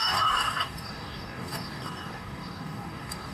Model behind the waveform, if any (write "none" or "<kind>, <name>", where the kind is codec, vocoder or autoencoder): codec, DAC